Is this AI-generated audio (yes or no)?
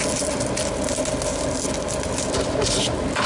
no